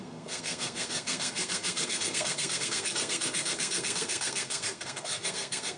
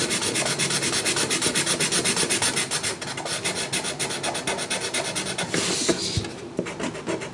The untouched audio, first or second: second